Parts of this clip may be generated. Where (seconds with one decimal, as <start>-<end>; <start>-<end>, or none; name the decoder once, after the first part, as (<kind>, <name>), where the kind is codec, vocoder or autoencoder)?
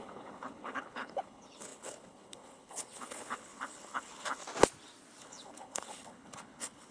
0.0-4.4 (codec, HILCodec); 5.2-6.9